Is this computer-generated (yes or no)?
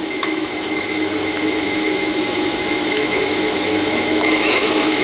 yes